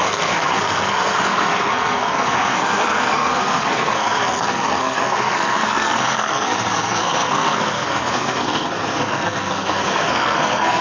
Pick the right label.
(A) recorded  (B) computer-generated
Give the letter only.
B